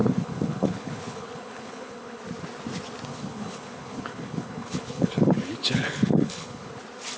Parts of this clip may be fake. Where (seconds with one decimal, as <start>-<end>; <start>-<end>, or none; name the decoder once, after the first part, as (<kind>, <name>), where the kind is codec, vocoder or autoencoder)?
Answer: 0.0-2.2 (codec, HILCodec); 3.1-6.8